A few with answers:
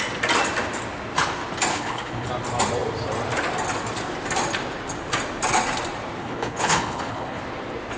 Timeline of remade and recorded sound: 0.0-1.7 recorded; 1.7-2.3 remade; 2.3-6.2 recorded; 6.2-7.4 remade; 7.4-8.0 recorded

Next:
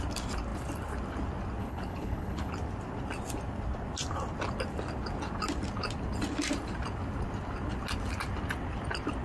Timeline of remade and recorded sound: 0.0-1.6 recorded; 1.6-2.5 remade; 2.5-9.2 recorded

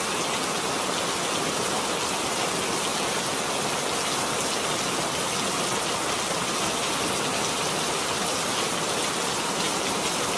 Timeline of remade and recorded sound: 0.0-10.4 recorded

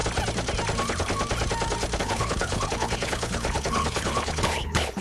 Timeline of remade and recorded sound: 0.0-2.0 recorded; 2.0-5.0 remade

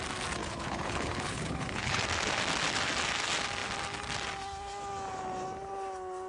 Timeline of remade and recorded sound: 0.0-0.4 recorded; 0.4-2.0 remade; 2.0-6.3 recorded

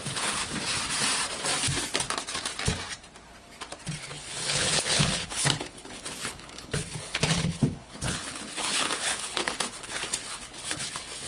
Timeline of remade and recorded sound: 0.0-0.4 remade; 0.4-4.0 recorded; 4.0-11.3 remade

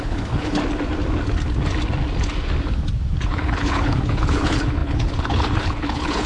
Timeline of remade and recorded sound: 0.0-0.6 remade; 0.6-3.2 recorded; 3.2-6.3 remade